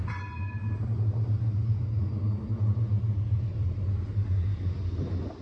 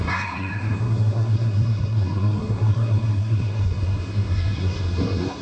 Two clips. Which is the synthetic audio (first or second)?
second